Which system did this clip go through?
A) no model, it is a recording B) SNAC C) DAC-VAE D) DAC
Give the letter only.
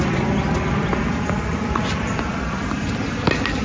A